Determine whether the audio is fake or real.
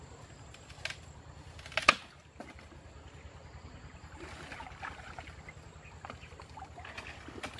real